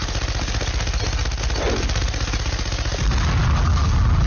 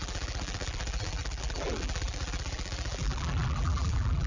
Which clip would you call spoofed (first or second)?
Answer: second